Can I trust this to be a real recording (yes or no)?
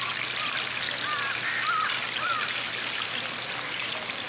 yes